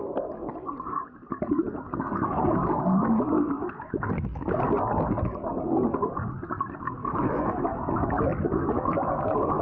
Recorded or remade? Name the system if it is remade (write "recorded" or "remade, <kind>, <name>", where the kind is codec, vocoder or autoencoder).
recorded